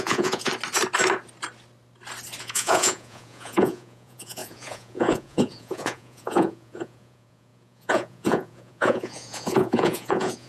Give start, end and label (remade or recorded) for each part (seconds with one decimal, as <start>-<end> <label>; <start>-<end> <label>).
0.0-0.5 remade; 0.5-2.4 recorded; 2.4-10.5 remade